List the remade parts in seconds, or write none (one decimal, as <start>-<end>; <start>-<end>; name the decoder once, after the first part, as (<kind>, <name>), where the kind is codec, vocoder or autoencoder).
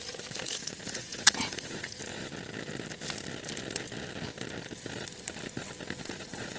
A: 0.0-2.0 (vocoder, Vocos); 6.0-6.6